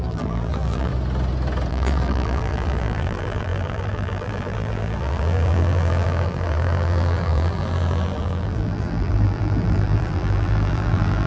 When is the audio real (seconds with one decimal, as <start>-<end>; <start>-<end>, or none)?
0.9-1.7